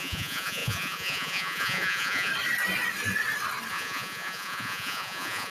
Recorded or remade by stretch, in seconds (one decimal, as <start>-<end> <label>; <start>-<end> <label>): 0.0-2.3 remade; 2.3-3.7 recorded; 3.7-5.5 remade